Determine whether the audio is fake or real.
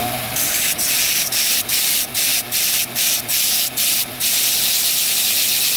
real